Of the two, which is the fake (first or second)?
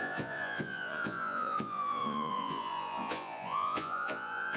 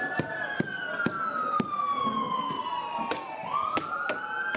first